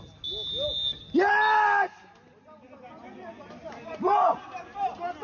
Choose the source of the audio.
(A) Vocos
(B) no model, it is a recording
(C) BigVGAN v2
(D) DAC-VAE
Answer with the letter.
B